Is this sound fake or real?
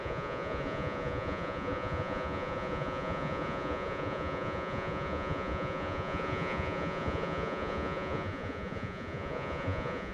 fake